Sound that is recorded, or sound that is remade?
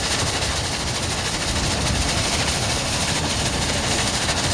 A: recorded